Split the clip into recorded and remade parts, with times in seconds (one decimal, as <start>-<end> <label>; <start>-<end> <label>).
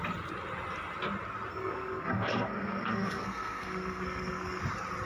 0.0-1.5 recorded; 1.5-4.6 remade; 4.6-5.1 recorded